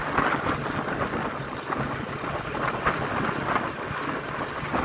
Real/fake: real